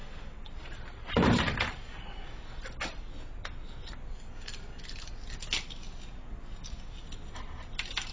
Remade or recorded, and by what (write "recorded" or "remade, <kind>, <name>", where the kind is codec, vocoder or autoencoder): recorded